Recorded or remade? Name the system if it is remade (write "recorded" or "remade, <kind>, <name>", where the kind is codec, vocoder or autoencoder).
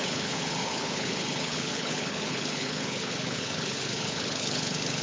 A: remade, codec, HILCodec